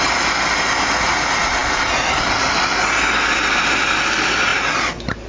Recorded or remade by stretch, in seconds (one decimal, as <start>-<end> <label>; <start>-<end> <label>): 0.0-5.3 recorded